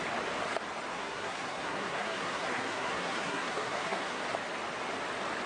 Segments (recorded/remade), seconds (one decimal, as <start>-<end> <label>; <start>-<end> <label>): 0.0-0.9 recorded; 0.9-4.2 remade; 4.2-5.5 recorded